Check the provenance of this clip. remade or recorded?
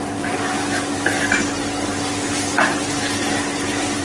recorded